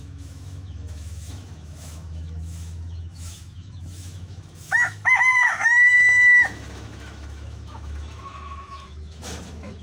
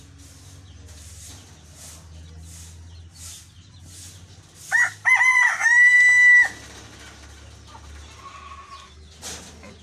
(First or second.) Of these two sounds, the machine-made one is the first